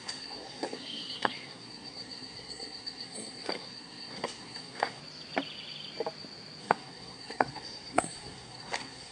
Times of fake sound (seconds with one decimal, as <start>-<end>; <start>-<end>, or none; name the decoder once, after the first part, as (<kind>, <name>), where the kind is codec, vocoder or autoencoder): 0.0-5.0 (codec, SNAC); 6.6-9.1